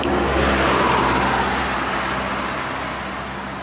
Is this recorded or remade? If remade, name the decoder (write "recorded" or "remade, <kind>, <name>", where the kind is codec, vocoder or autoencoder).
recorded